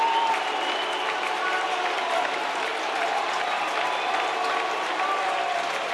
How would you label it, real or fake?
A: real